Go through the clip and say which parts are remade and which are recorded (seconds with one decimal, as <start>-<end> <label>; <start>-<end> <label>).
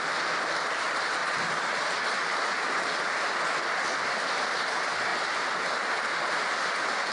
0.0-5.1 remade; 5.1-5.6 recorded; 5.6-7.1 remade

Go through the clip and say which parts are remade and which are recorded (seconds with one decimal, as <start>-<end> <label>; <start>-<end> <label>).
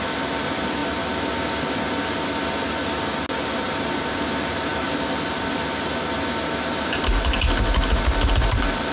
0.0-8.9 recorded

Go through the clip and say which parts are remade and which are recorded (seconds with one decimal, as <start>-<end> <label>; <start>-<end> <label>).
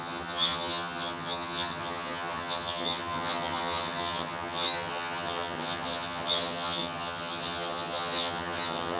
0.0-9.0 remade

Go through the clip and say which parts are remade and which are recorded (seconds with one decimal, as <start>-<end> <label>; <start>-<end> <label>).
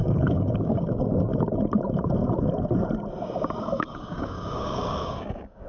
0.0-1.3 remade; 1.3-3.6 recorded; 3.6-5.7 remade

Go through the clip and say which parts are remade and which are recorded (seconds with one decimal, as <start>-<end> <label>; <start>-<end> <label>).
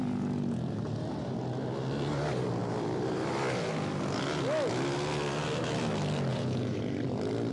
0.0-6.3 recorded; 6.3-6.8 remade; 6.8-7.5 recorded